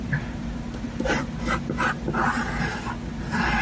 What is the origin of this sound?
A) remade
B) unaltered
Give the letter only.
B